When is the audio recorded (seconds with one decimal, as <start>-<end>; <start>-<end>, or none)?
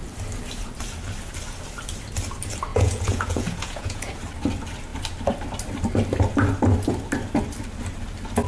0.0-2.7; 4.1-8.5